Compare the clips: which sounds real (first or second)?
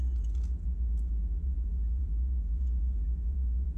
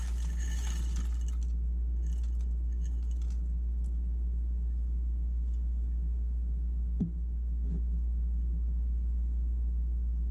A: second